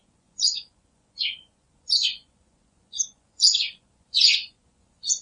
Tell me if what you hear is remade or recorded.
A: remade